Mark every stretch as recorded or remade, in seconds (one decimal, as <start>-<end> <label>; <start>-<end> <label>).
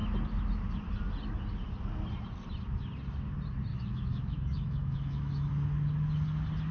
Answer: 0.0-3.7 recorded; 3.7-5.5 remade; 5.5-6.7 recorded